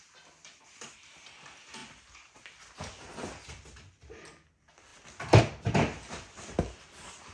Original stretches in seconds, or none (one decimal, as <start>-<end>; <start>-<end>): 0.0-7.3